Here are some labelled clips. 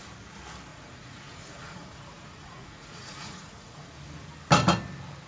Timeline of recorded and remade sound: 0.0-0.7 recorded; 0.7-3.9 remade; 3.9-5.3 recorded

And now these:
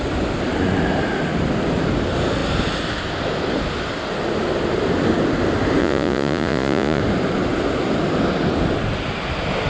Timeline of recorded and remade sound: 0.0-5.8 recorded; 5.8-7.0 remade; 7.0-9.7 recorded

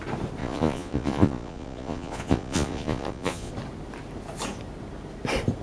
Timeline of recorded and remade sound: 0.0-0.4 recorded; 0.4-3.5 remade; 3.5-5.6 recorded

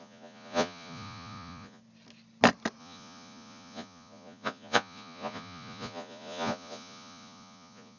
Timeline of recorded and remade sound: 0.0-1.8 remade; 1.8-2.8 recorded; 2.8-8.0 remade

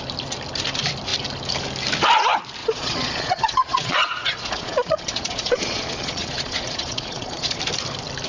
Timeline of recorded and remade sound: 0.0-2.6 recorded; 2.6-7.6 remade; 7.6-8.3 recorded

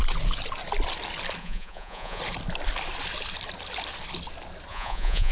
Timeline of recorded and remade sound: 0.0-1.4 recorded; 1.4-2.2 remade; 2.2-4.7 recorded; 4.7-5.3 remade

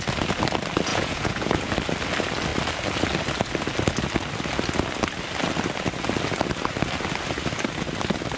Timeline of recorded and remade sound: 0.0-0.9 recorded; 0.9-1.7 remade; 1.7-8.4 recorded